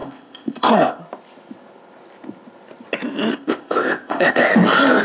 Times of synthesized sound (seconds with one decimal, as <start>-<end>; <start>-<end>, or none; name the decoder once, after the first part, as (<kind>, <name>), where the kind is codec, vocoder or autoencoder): 0.0-1.0 (codec, ZipCodec); 3.3-4.5